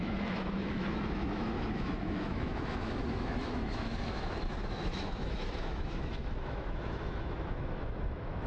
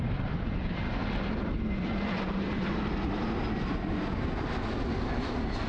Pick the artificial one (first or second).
first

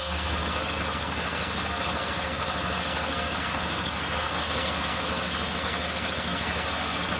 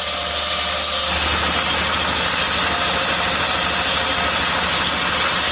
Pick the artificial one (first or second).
first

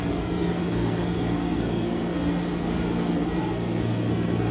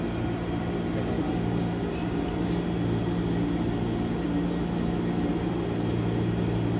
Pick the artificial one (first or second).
first